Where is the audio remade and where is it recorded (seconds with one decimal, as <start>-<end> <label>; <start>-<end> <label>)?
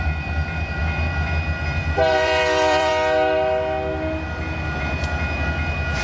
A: 0.0-0.8 remade; 0.8-1.8 recorded; 1.8-2.9 remade; 2.9-6.0 recorded